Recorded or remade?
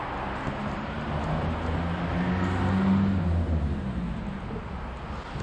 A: recorded